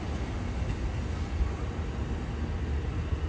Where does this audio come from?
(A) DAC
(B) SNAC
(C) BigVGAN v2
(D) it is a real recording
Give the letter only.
D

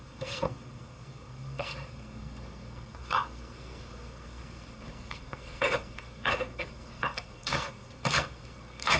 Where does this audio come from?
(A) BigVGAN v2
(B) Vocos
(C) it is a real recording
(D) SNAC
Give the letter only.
D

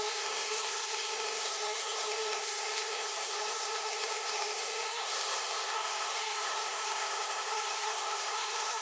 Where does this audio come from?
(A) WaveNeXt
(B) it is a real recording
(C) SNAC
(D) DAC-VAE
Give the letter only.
C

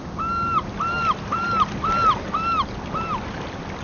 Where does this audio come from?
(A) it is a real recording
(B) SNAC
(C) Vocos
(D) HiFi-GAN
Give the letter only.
A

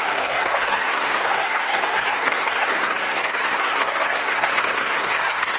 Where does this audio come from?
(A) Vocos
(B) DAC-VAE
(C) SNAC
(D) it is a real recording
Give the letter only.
C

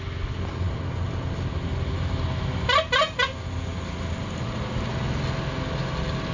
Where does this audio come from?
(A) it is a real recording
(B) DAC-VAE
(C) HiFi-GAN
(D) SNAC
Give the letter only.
A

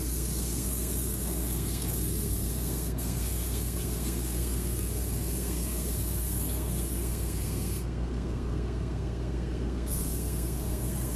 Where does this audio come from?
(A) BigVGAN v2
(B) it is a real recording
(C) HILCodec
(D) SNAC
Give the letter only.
D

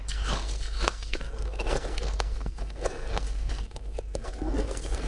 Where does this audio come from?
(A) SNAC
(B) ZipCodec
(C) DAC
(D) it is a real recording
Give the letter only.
A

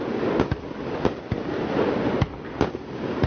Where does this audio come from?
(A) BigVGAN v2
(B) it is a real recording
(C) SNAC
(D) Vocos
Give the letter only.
B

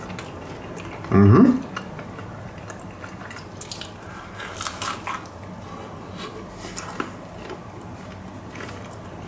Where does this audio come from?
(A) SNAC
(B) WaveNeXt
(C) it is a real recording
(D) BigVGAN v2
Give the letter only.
C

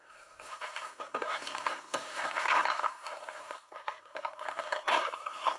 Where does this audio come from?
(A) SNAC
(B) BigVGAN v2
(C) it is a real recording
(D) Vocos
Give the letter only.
A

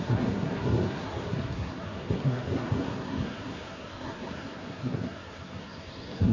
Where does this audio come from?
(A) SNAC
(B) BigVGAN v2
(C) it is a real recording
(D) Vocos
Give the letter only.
A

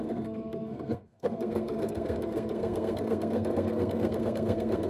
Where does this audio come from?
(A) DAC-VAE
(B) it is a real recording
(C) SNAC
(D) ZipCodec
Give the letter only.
C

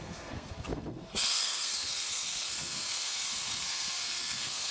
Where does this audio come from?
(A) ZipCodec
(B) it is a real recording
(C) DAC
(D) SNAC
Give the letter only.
D